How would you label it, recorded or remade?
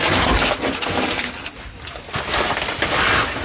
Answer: recorded